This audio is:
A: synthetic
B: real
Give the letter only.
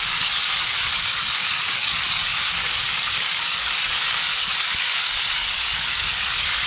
A